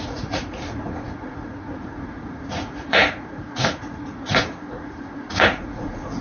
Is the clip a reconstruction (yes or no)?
yes